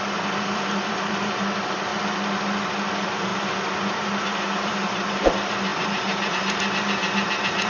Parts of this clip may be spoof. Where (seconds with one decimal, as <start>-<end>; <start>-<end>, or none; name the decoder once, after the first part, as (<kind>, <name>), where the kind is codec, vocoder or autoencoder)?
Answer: 0.0-1.9 (vocoder, BigVGAN v2); 2.9-7.7